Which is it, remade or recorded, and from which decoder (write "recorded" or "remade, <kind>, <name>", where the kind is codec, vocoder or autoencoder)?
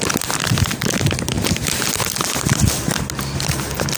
recorded